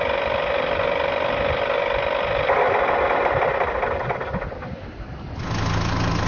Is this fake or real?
real